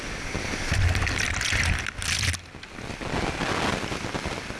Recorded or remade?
recorded